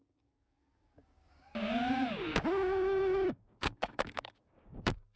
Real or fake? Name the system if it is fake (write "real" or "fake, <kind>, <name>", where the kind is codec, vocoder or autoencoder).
fake, codec, DAC